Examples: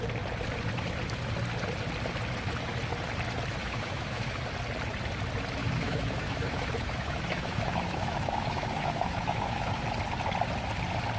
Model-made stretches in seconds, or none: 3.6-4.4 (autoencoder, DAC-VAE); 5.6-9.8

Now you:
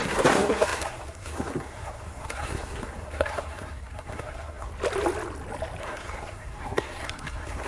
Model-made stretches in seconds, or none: 0.0-4.7 (codec, SNAC); 5.8-7.7

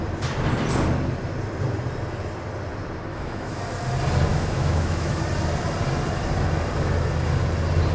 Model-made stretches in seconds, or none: 3.1-3.6 (autoencoder, DAC-VAE); 4.3-5.2

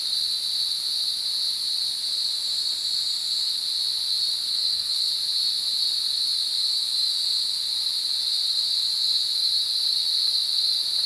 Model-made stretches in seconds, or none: 4.5-5.1 (codec, SNAC)

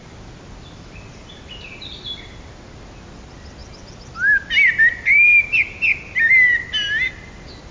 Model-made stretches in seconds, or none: none

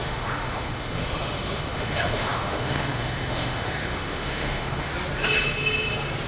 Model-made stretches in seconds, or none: 0.0-4.9 (autoencoder, DAC-VAE)